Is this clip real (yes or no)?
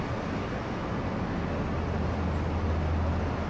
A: yes